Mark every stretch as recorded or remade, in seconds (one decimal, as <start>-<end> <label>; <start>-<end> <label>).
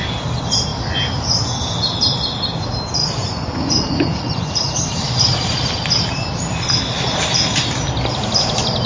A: 0.0-3.0 recorded; 3.0-4.5 remade; 4.5-8.9 recorded